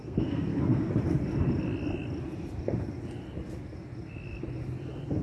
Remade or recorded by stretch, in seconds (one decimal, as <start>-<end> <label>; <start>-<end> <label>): 0.0-0.9 remade; 0.9-5.2 recorded